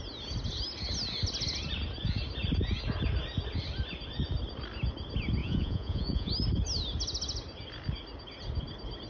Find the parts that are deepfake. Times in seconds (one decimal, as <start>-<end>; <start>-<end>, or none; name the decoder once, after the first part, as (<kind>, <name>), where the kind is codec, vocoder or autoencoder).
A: 5.4-6.3 (vocoder, Vocos)